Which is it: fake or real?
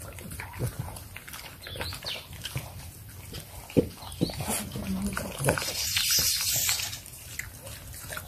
real